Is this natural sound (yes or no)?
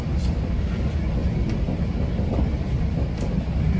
yes